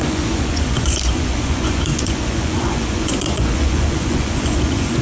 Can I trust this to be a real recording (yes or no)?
no